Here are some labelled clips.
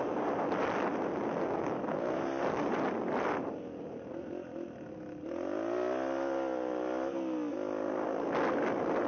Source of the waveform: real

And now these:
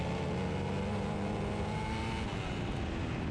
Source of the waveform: real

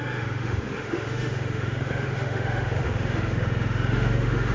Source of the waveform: fake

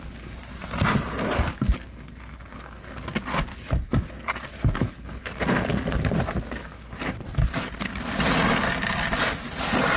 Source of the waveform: real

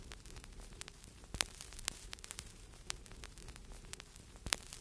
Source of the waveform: fake